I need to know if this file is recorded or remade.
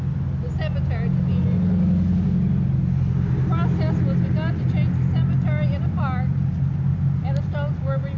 recorded